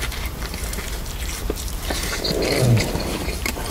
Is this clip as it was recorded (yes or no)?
no